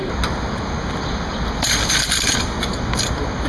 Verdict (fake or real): real